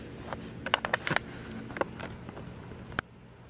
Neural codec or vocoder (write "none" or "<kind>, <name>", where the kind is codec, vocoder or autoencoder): none